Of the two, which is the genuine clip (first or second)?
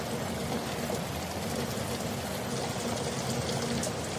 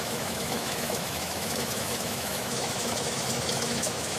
first